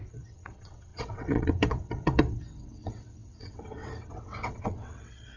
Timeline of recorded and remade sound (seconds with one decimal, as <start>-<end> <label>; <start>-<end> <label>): 0.0-5.4 remade